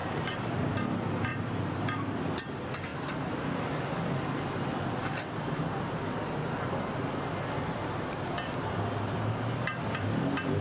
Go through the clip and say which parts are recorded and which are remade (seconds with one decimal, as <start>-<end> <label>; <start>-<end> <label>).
0.0-0.7 remade; 0.7-1.3 recorded; 1.3-2.2 remade; 2.2-10.6 recorded